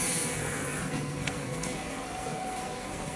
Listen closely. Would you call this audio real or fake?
fake